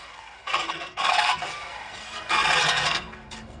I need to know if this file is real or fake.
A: fake